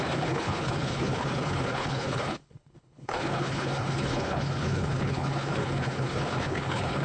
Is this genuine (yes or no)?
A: no